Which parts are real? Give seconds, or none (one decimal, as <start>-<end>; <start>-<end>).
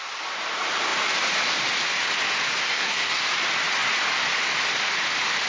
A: 0.0-2.6; 3.2-5.5